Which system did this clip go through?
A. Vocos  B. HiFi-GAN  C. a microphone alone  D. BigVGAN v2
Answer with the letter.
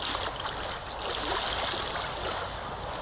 C